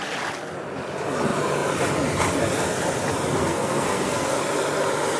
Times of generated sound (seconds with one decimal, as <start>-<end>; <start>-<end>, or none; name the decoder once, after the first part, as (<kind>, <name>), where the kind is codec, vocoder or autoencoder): 3.4-4.4 (codec, SNAC)